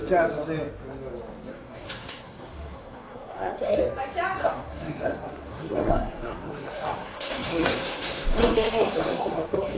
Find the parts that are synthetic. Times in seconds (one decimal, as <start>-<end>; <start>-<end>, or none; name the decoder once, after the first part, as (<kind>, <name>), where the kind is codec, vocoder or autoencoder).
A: 1.5-3.8 (codec, SNAC); 4.4-9.8